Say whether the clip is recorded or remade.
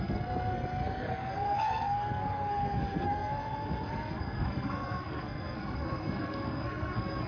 remade